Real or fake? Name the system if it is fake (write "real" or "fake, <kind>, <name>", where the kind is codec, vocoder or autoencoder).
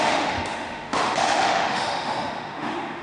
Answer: fake, autoencoder, DAC-VAE